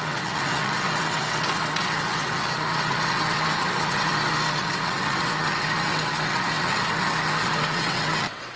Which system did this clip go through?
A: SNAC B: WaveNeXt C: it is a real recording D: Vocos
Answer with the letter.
B